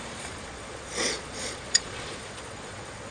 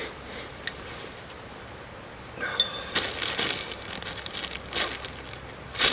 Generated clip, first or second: first